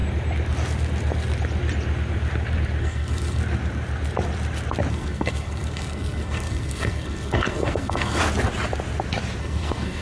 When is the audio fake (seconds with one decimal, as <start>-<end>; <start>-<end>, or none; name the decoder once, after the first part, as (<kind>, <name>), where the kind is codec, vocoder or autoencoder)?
2.8-3.4 (codec, SNAC); 4.9-8.2; 9.4-10.0